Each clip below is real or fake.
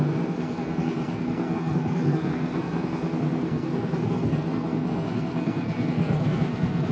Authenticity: fake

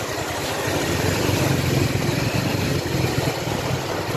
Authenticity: real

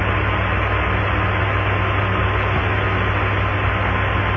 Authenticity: real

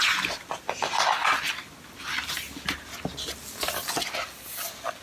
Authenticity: real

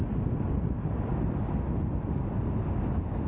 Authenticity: real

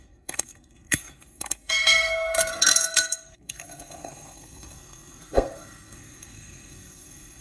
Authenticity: fake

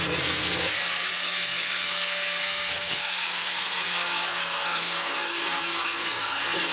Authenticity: fake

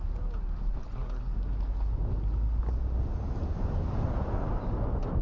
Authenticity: real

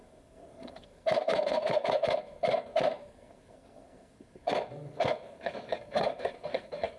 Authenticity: fake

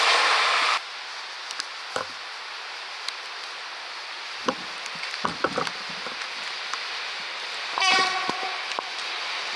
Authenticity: real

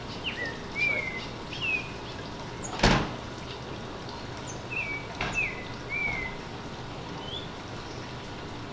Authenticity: real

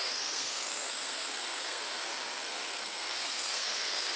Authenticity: fake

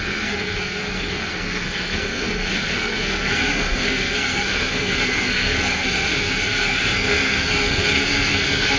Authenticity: fake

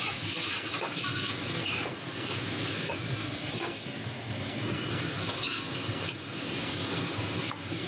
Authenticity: fake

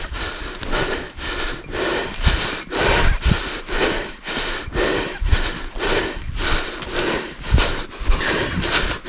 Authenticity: real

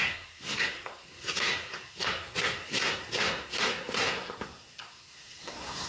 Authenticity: fake